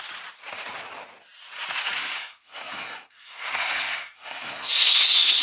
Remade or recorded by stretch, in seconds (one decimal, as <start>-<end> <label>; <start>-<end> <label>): 0.0-2.0 recorded; 2.0-5.4 remade